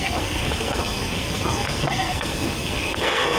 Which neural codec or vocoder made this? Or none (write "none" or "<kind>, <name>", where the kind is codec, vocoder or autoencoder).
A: codec, SNAC